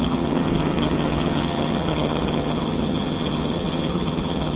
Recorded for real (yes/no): no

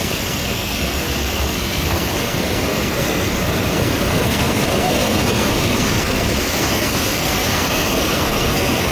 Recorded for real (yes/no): no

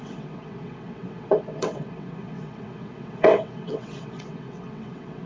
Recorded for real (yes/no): no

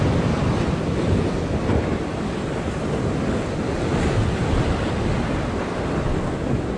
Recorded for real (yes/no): yes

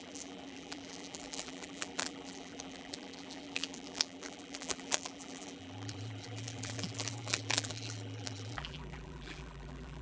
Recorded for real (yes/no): no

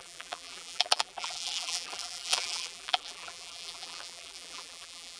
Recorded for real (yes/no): no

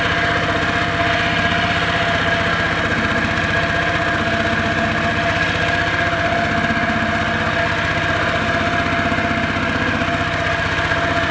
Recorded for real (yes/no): yes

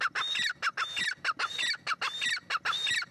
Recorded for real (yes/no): yes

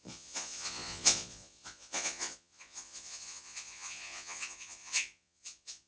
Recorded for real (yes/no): no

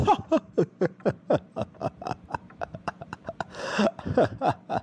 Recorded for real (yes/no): no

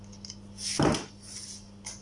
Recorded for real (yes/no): yes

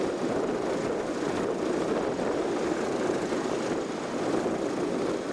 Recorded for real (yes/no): yes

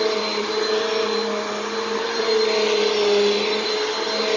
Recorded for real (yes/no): yes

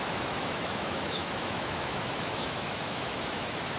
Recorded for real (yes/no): no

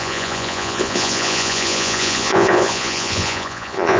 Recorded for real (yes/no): no